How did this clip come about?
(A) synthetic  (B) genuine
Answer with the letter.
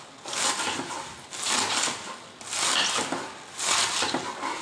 B